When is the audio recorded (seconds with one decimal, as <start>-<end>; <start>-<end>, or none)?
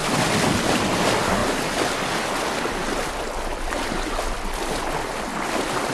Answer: 0.0-5.9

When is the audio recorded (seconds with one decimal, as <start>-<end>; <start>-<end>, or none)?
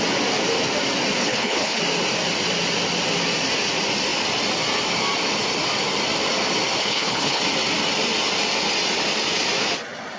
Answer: 0.0-1.2; 1.8-6.8; 7.4-10.2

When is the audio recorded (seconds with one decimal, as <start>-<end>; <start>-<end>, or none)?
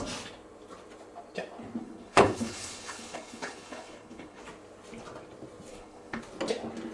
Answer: 0.0-1.8; 4.4-5.7; 6.2-6.9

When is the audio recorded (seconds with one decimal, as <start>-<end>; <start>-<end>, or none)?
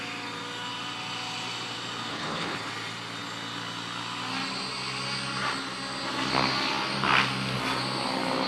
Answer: 0.0-2.1; 2.7-8.5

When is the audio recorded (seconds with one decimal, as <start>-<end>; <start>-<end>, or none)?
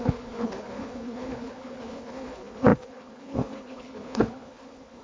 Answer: none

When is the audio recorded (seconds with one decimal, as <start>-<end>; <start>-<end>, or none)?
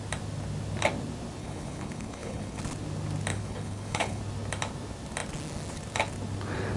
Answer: 0.0-1.4; 2.6-3.3; 4.2-6.8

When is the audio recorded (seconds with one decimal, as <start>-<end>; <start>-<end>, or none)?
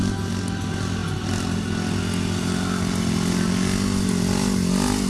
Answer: 0.0-5.1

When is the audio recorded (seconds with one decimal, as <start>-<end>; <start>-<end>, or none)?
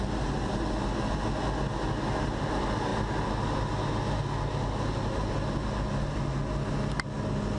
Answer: 0.0-7.6